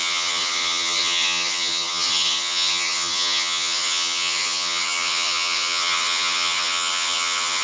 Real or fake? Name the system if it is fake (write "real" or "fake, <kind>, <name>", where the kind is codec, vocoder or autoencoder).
fake, vocoder, HiFi-GAN